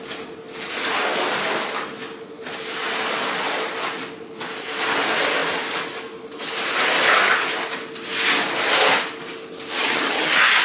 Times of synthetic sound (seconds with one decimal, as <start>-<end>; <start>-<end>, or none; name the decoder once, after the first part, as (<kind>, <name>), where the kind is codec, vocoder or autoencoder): 9.8-10.6 (vocoder, HiFi-GAN)